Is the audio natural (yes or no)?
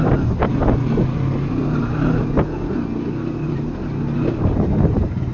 yes